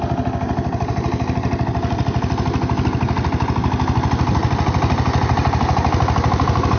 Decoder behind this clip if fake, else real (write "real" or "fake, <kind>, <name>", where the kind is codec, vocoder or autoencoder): real